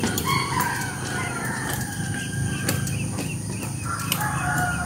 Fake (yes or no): no